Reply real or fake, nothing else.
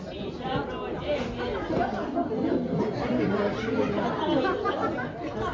real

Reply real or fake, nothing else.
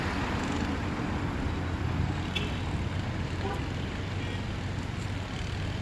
real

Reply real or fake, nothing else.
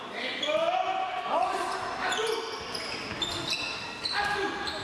real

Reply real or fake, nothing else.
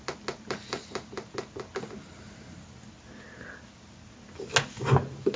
real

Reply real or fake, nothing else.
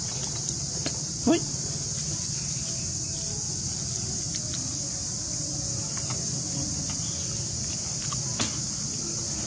real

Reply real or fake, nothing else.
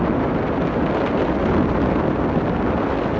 real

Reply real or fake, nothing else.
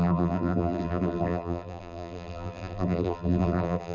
fake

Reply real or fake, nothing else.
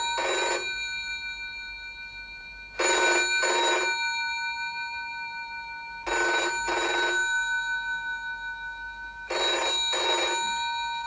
real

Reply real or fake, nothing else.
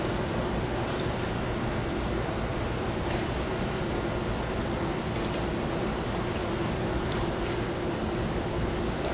real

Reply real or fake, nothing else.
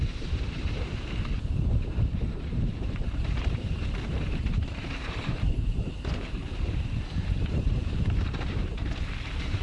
fake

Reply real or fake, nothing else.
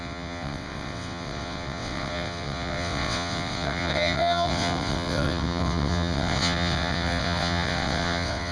fake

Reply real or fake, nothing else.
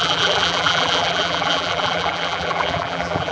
fake